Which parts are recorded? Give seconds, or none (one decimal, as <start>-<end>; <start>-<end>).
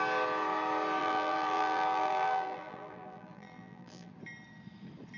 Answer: 0.0-1.0; 4.1-5.2